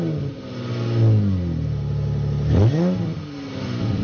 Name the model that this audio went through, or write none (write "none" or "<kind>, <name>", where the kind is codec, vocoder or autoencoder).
none